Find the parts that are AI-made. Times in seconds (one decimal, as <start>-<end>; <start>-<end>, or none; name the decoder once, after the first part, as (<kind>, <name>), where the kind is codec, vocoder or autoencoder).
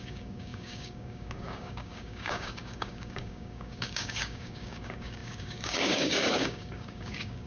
0.0-7.5 (codec, DAC)